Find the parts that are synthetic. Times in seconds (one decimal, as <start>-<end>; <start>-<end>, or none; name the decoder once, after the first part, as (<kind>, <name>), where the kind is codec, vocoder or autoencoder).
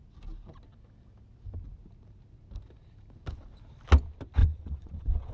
4.4-5.3 (vocoder, Vocos)